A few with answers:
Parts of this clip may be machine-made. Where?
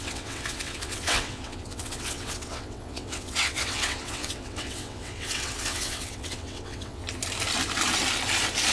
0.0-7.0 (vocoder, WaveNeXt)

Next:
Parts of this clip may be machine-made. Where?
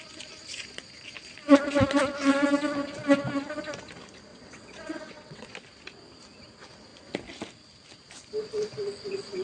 4.3-5.5 (vocoder, WaveNeXt)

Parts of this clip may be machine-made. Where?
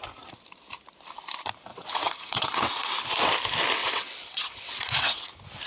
1.7-2.9 (vocoder, WaveNeXt); 3.8-5.3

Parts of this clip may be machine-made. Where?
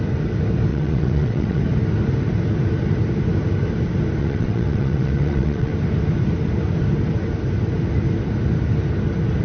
0.7-1.6 (vocoder, WaveNeXt); 4.2-5.7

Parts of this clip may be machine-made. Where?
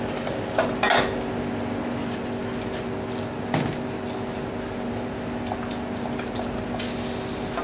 none